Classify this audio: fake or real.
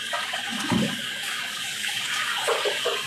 fake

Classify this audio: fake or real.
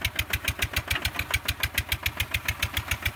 real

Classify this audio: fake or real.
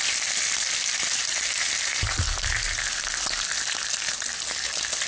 real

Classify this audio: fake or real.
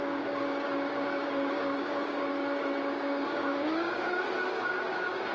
fake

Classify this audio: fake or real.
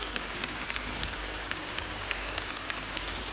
fake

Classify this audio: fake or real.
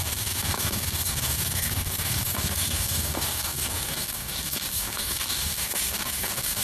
fake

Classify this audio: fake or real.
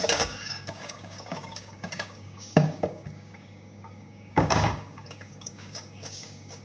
fake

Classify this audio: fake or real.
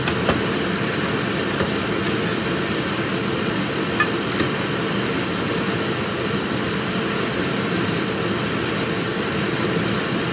real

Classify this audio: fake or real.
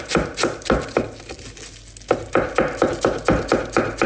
real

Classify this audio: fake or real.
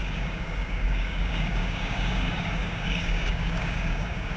fake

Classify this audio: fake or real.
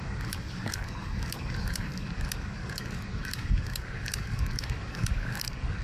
fake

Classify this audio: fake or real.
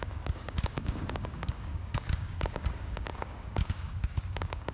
fake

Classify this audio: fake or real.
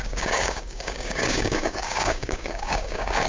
fake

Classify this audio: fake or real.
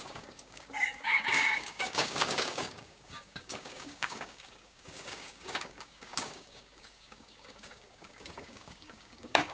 fake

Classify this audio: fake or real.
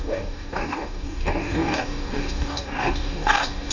fake